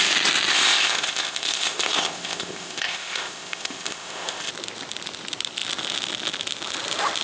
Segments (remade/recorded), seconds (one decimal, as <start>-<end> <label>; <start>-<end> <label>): 0.0-0.5 recorded; 0.5-4.5 remade; 4.5-7.2 recorded